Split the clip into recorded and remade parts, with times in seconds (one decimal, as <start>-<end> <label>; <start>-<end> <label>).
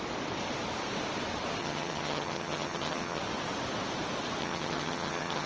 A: 0.0-1.6 recorded; 1.6-3.2 remade; 3.2-4.4 recorded; 4.4-5.5 remade